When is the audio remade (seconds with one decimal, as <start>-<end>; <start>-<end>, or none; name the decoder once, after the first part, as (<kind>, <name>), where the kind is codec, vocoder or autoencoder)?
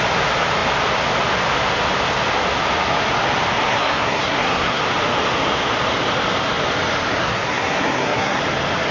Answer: 3.7-4.8 (codec, SNAC); 7.2-8.4